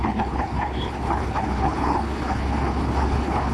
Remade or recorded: remade